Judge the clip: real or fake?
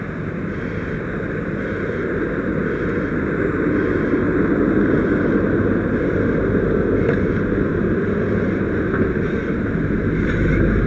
real